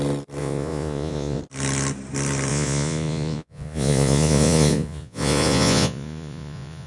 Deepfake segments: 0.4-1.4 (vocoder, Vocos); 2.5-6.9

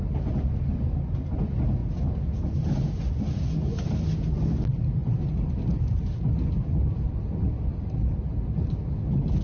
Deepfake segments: none

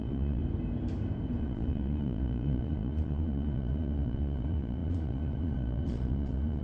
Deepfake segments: 0.0-0.4 (vocoder, Vocos); 1.4-6.6

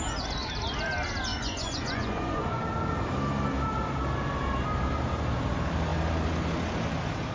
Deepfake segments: 1.3-2.6 (vocoder, Vocos)